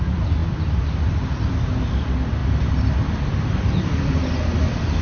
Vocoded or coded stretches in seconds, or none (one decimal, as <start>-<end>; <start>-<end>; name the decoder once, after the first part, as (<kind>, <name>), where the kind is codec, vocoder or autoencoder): none